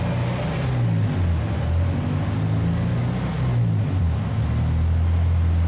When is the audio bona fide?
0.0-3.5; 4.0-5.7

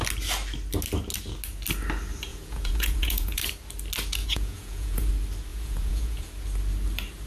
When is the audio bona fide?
0.0-2.3; 3.4-4.2; 5.1-5.5; 6.3-7.3

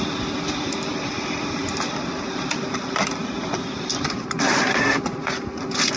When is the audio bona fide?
0.0-0.9; 2.4-3.2; 5.2-6.0

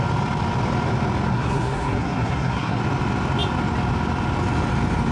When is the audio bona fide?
0.0-1.3; 2.8-5.1

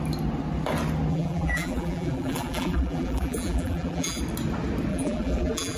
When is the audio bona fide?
0.0-1.1; 4.2-4.9